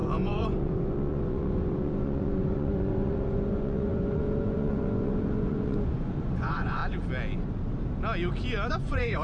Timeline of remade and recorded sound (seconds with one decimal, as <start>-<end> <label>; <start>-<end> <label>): 0.0-6.8 remade; 6.8-8.7 recorded; 8.7-9.2 remade